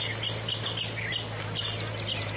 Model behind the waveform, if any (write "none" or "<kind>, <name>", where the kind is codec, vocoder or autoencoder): none